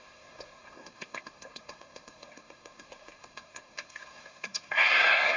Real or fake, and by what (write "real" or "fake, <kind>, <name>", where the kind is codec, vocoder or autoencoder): fake, codec, SNAC